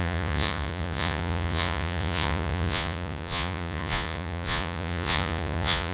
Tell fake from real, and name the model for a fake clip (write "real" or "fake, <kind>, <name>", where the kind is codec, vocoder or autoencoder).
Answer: fake, vocoder, Vocos